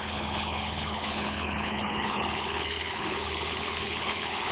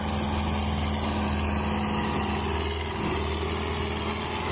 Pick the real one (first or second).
second